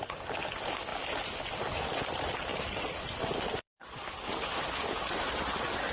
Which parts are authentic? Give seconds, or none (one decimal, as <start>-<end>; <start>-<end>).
0.0-2.5; 4.9-5.9